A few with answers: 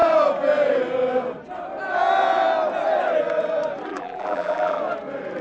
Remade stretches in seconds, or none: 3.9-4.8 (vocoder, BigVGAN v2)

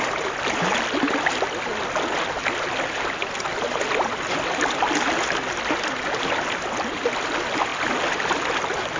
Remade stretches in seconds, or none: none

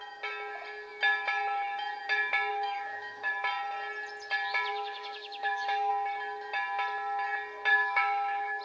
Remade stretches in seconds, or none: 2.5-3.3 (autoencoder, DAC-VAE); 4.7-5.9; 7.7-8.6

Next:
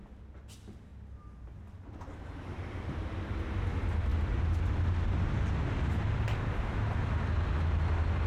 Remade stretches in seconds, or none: none

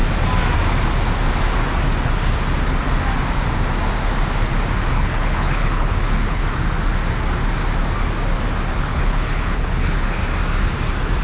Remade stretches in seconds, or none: 4.9-6.4 (codec, HILCodec); 8.7-10.2